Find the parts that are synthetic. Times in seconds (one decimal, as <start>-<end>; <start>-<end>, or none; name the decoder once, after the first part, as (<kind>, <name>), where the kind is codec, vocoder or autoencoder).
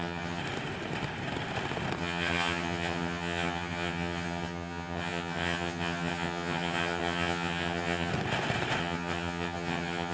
0.0-0.4 (vocoder, HiFi-GAN); 2.0-8.1; 8.8-10.1